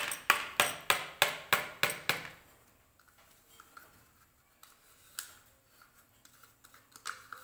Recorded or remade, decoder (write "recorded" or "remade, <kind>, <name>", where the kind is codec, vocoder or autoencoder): recorded